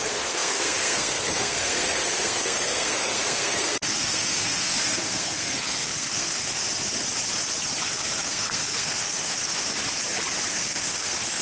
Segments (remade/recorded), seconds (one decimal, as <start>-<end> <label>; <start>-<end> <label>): 0.0-6.6 remade; 6.6-7.8 recorded; 7.8-9.6 remade; 9.6-10.5 recorded; 10.5-11.4 remade